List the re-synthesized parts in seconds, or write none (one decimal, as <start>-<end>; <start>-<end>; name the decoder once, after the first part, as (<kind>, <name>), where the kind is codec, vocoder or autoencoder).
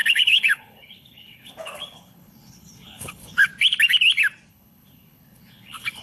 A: 0.0-3.5 (codec, HILCodec); 4.5-6.0